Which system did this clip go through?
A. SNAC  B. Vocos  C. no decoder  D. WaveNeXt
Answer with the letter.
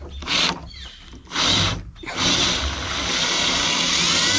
C